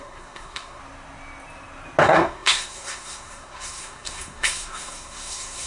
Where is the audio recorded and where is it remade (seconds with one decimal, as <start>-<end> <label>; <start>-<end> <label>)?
0.0-0.8 remade; 0.8-2.0 recorded; 2.0-5.7 remade

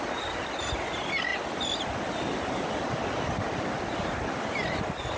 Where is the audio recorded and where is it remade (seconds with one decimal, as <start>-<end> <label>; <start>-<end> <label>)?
0.0-5.2 recorded

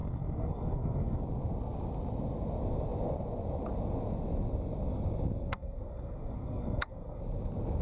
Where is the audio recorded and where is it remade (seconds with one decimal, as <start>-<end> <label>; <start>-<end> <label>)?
0.0-1.2 remade; 1.2-5.5 recorded; 5.5-7.2 remade; 7.2-7.8 recorded

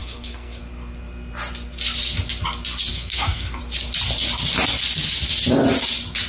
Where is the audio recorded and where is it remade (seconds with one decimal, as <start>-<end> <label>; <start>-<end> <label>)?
0.0-0.6 remade; 0.6-2.9 recorded; 2.9-3.6 remade; 3.6-6.3 recorded

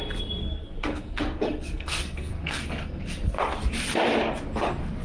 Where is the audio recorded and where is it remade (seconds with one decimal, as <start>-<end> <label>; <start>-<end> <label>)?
0.0-0.4 recorded; 0.4-3.4 remade; 3.4-5.0 recorded

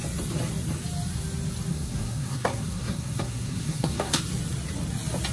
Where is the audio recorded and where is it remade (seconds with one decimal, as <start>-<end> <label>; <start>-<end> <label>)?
0.0-1.7 recorded; 1.7-4.2 remade; 4.2-5.3 recorded

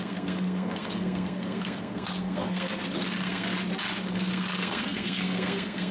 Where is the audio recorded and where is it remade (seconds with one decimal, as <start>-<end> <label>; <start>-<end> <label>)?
0.0-3.5 remade; 3.5-4.1 recorded; 4.1-5.9 remade